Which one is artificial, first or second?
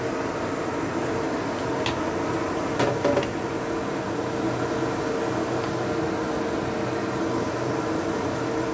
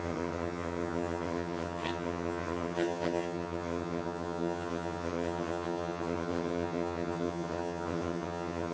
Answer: second